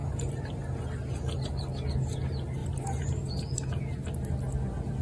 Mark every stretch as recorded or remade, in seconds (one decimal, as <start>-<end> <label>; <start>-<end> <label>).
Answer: 0.0-1.7 remade; 1.7-2.6 recorded; 2.6-3.5 remade; 3.5-5.0 recorded